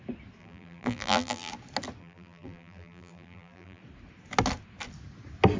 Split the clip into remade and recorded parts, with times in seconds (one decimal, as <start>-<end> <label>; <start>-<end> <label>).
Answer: 0.0-0.4 recorded; 0.4-1.5 remade; 1.5-2.0 recorded; 2.0-3.8 remade; 3.8-5.6 recorded